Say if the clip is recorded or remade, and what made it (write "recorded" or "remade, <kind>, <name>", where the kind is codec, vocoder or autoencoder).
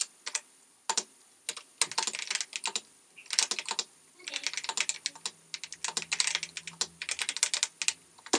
recorded